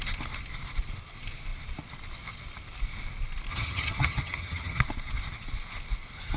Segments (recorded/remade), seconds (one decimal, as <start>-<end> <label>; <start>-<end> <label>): 0.0-3.5 recorded; 3.5-4.8 remade; 4.8-6.4 recorded